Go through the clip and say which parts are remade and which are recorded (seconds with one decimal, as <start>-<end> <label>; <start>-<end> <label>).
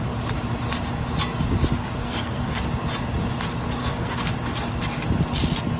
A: 0.0-2.0 recorded; 2.0-2.6 remade; 2.6-3.8 recorded; 3.8-4.3 remade; 4.3-5.8 recorded